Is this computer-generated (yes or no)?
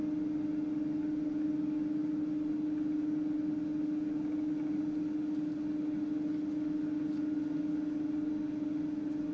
no